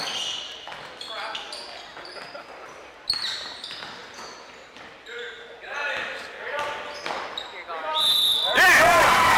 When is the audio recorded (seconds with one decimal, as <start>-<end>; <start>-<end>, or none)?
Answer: 0.0-9.4